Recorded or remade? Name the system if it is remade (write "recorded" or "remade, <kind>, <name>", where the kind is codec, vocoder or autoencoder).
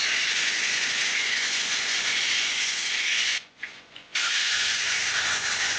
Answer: remade, vocoder, Vocos